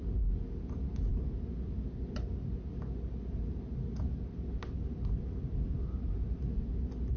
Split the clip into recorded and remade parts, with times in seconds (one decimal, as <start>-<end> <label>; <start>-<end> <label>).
0.0-7.2 recorded